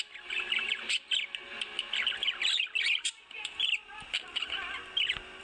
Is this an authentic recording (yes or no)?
no